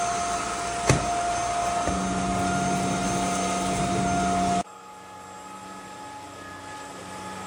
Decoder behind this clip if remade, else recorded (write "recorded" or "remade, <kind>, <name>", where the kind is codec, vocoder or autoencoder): recorded